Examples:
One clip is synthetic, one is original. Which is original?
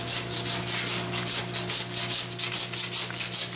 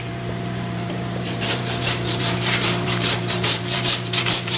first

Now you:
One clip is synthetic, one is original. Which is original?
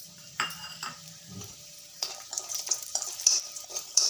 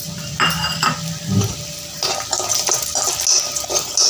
second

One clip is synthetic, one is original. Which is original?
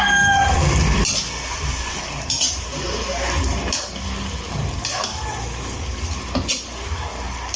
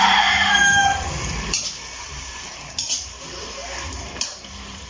first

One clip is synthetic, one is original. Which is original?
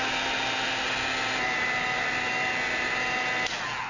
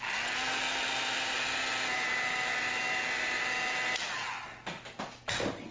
first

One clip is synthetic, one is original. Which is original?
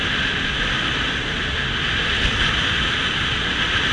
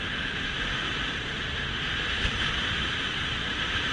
first